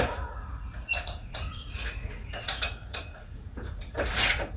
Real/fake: fake